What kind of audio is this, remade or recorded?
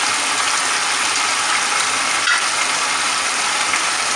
recorded